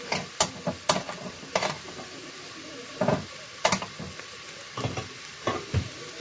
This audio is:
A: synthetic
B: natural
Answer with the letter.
B